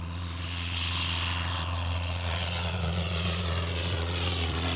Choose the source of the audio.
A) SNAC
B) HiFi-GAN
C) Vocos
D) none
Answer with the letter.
C